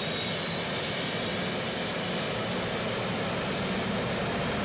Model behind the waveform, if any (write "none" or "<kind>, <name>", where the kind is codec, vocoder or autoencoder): none